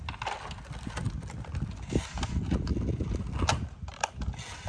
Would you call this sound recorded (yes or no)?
yes